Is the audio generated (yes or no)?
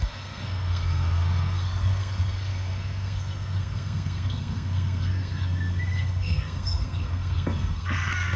yes